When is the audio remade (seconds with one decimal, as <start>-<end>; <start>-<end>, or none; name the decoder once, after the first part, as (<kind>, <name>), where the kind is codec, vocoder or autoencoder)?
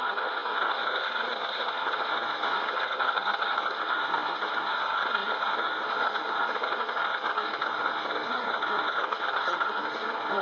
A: 0.0-10.4 (codec, SNAC)